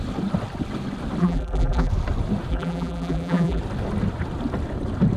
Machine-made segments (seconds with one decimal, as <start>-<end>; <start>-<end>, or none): 1.2-1.9; 2.5-3.6